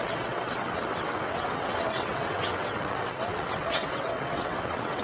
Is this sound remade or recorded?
remade